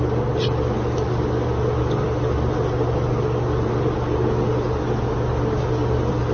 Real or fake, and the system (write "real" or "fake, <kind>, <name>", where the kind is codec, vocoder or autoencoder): real